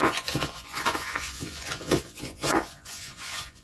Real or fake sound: fake